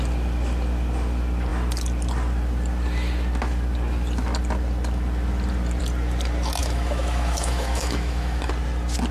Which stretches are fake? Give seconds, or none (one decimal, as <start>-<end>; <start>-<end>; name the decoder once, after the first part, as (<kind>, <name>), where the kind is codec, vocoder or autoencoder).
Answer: 6.6-8.5 (autoencoder, DAC-VAE)